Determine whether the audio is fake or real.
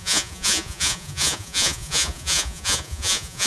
fake